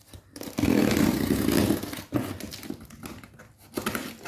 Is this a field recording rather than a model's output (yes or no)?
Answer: yes